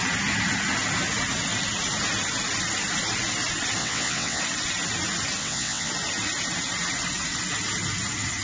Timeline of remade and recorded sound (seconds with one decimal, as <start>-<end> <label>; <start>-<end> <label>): 0.0-3.8 recorded; 3.8-4.4 remade; 4.4-5.4 recorded; 5.4-5.9 remade; 5.9-8.4 recorded